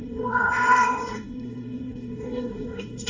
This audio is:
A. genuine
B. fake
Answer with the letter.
B